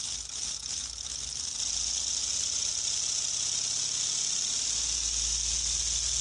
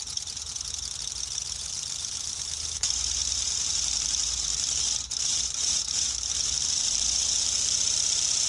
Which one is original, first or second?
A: first